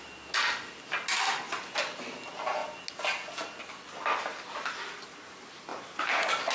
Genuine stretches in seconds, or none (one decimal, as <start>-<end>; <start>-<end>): 0.0-6.5